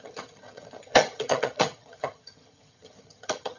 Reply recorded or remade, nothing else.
remade